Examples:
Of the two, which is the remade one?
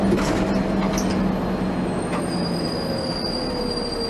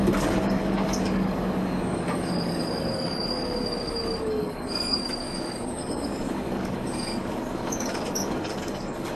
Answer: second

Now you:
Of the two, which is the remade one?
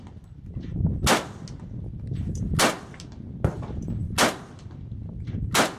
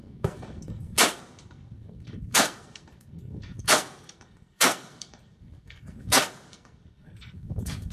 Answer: second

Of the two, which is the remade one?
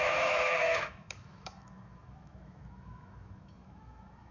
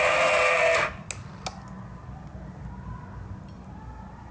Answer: first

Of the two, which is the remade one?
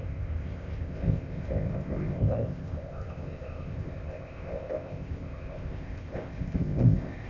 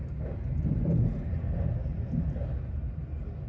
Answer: first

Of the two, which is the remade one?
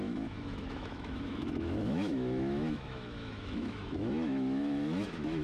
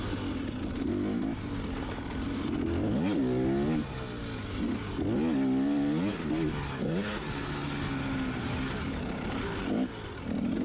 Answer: first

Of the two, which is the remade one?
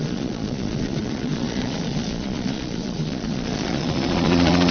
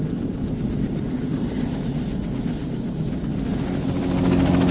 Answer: first